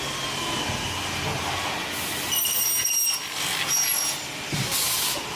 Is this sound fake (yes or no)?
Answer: no